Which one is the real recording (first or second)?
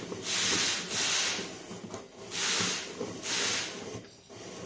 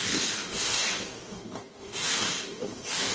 first